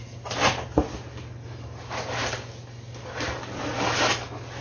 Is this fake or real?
real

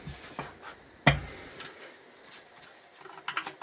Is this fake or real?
real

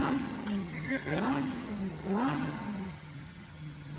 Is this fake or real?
fake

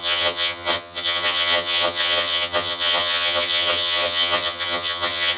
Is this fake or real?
fake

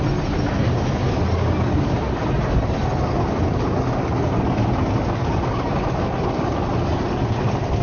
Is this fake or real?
real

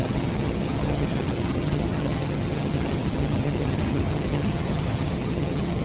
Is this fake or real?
fake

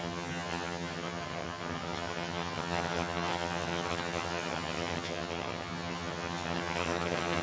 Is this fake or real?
fake